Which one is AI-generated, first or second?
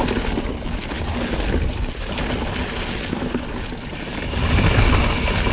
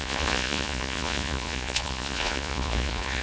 second